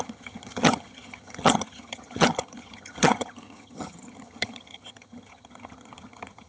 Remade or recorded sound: remade